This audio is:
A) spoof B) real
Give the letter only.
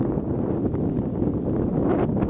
B